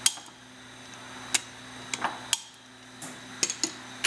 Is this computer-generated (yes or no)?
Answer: no